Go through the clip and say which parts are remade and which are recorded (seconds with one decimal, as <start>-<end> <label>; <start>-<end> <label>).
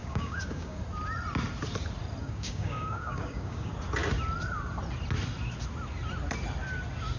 0.0-0.8 remade; 0.8-2.2 recorded; 2.2-3.7 remade; 3.7-7.2 recorded